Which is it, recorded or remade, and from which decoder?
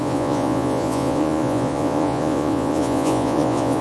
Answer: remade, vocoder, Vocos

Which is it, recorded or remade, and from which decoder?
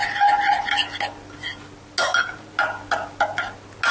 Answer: recorded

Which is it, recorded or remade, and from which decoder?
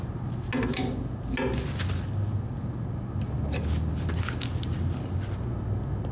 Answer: recorded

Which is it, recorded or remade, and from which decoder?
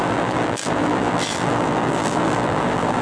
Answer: remade, vocoder, BigVGAN v2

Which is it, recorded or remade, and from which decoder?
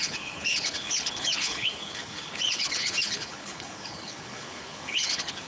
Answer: remade, codec, HILCodec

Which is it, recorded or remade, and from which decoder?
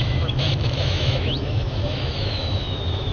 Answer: remade, autoencoder, DAC-VAE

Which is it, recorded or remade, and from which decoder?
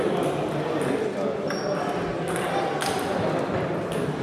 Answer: recorded